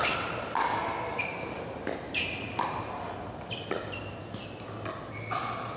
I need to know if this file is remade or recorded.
recorded